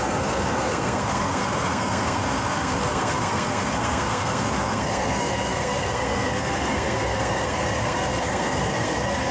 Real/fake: fake